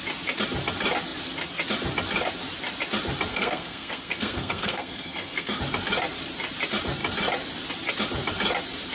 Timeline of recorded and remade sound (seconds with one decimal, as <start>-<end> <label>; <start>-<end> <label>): 0.0-3.3 recorded; 3.3-5.6 remade; 5.6-8.9 recorded